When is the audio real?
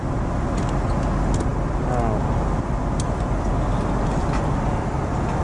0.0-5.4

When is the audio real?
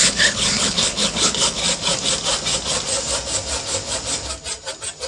1.6-5.1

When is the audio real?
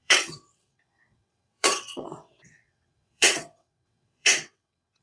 none